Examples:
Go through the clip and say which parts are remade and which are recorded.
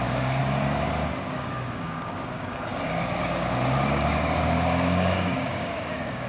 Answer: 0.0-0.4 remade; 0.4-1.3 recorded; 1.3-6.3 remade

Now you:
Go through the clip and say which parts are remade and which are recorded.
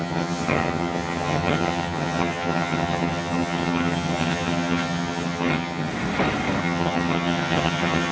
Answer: 0.0-5.9 remade; 5.9-6.6 recorded; 6.6-8.1 remade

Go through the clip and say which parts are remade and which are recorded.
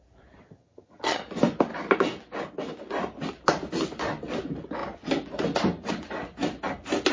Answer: 0.0-0.4 recorded; 0.4-1.2 remade; 1.2-7.1 recorded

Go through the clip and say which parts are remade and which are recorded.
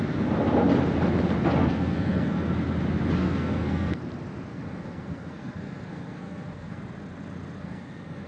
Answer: 0.0-1.6 recorded; 1.6-2.5 remade; 2.5-3.2 recorded; 3.2-4.0 remade; 4.0-4.5 recorded; 4.5-6.8 remade; 6.8-7.6 recorded; 7.6-8.3 remade